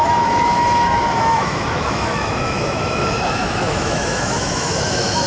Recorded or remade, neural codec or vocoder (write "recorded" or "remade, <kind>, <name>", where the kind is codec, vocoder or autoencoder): remade, autoencoder, DAC-VAE